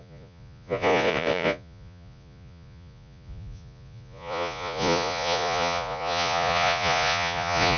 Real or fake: fake